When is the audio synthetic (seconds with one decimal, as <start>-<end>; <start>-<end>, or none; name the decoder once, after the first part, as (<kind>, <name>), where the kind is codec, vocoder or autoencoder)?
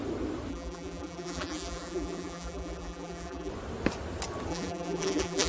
0.5-3.5 (vocoder, BigVGAN v2); 4.5-5.5